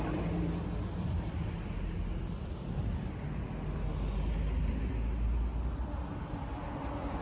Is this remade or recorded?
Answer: recorded